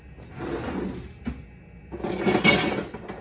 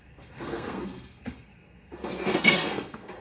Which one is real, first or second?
first